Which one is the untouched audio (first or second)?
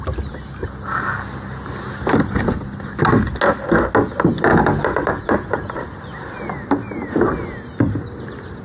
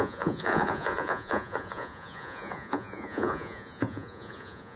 first